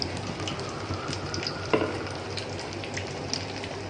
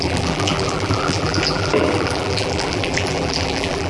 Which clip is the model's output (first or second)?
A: second